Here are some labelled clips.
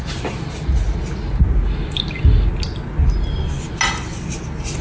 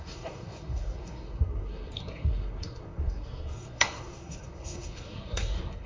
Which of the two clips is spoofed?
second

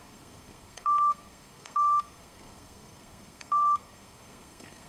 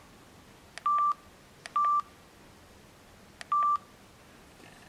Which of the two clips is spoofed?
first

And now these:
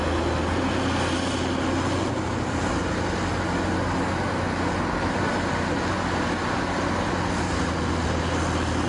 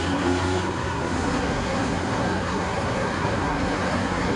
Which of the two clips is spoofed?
second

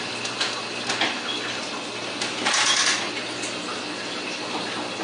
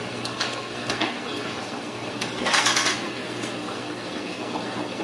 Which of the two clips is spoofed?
second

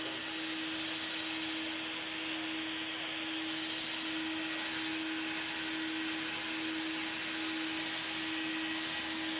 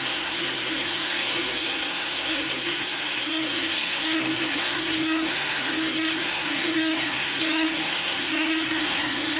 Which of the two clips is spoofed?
second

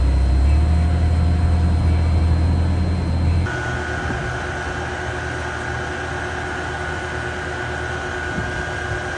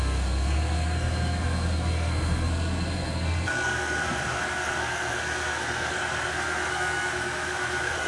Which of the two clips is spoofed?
second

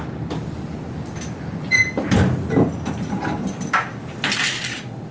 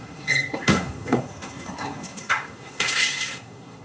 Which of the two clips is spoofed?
second